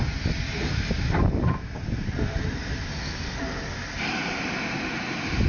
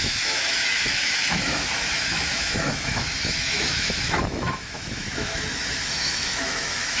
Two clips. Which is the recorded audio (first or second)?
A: first